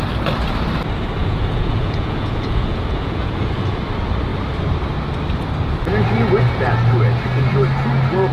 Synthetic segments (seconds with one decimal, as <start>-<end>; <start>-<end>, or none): 1.2-3.8